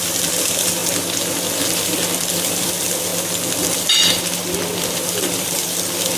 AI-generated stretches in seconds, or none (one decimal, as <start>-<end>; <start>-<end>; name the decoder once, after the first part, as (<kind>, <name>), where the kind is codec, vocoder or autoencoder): 0.0-0.8 (vocoder, BigVGAN v2); 2.2-3.1; 5.2-6.2